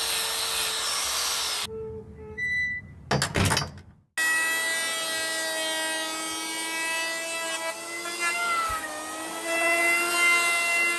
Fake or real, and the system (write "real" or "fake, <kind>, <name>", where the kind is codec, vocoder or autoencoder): real